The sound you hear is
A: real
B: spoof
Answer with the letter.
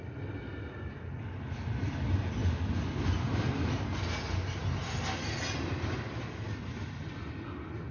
A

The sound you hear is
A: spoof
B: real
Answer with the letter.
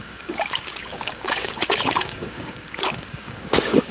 A